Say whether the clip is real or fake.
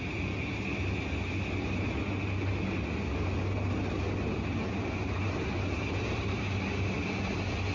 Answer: real